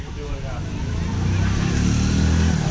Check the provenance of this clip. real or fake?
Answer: real